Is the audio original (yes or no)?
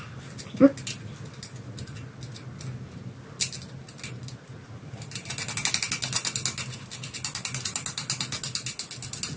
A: yes